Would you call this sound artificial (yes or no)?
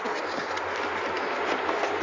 no